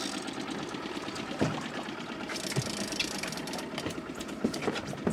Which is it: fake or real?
real